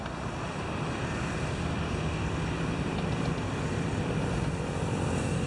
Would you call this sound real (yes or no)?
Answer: yes